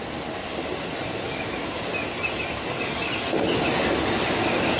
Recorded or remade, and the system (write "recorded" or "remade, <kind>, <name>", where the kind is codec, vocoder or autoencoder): recorded